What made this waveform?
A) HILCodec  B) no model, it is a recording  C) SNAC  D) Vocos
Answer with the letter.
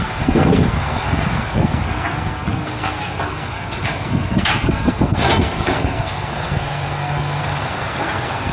C